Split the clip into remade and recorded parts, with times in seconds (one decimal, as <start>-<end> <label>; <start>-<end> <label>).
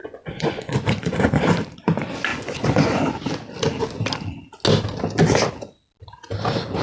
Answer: 0.0-1.4 remade; 1.4-2.3 recorded; 2.3-3.0 remade; 3.0-6.8 recorded